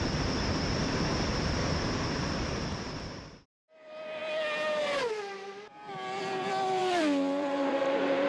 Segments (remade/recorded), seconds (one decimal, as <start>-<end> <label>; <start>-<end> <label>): 0.0-4.2 remade; 4.2-5.1 recorded; 5.1-8.3 remade